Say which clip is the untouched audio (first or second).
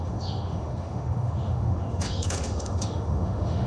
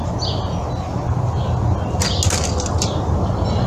second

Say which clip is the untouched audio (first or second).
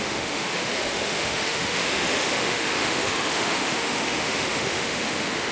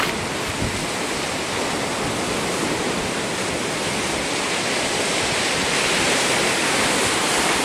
second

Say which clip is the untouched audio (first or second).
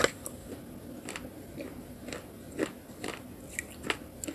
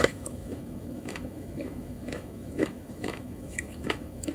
first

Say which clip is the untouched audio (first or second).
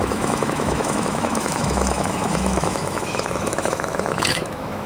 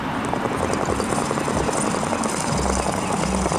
second